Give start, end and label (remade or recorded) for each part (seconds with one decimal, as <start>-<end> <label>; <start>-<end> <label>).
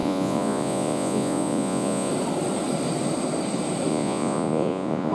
0.0-2.1 remade; 2.1-3.9 recorded; 3.9-5.1 remade